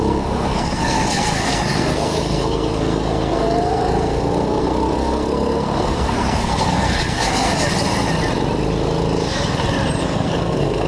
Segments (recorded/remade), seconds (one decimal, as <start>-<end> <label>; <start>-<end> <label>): 0.0-7.5 remade; 7.5-10.0 recorded; 10.0-10.9 remade